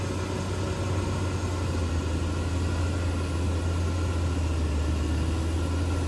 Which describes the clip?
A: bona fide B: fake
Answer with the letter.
A